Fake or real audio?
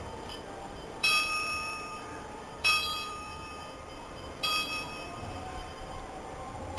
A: fake